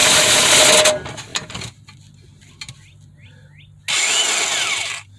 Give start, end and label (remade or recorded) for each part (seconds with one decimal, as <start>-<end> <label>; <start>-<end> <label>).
0.0-0.5 remade; 0.5-1.3 recorded; 1.3-2.1 remade; 2.1-5.2 recorded